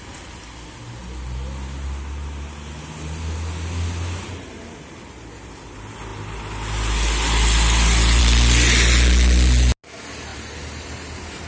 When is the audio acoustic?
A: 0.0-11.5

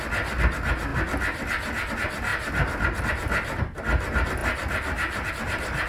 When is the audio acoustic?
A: 0.0-5.9

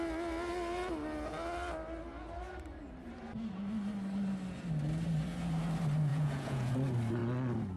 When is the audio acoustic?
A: 0.0-6.1; 6.7-7.8

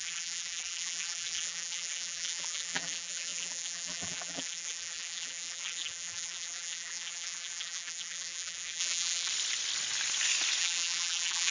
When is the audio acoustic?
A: 9.3-10.6

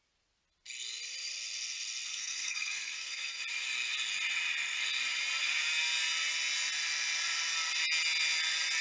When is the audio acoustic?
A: 0.0-2.1; 3.4-8.8

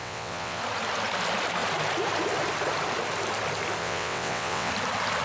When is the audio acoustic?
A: 0.6-3.8; 4.7-5.2